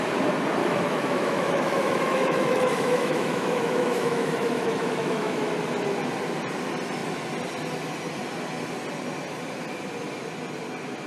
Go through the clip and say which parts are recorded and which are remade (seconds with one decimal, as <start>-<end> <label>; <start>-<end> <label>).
0.0-0.6 recorded; 0.6-5.5 remade; 5.5-11.1 recorded